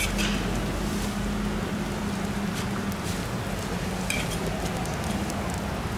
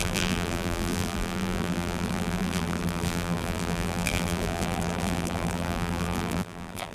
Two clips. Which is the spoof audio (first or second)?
second